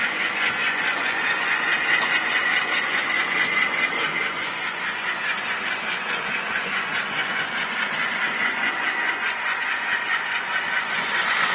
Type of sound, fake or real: fake